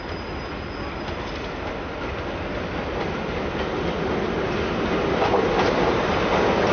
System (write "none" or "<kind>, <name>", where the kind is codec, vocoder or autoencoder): none